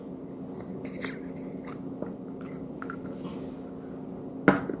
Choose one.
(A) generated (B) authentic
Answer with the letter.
B